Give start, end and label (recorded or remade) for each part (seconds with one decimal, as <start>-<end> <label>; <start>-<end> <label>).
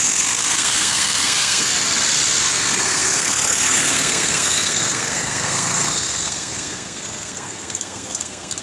0.0-1.7 remade; 1.7-2.4 recorded; 2.4-8.6 remade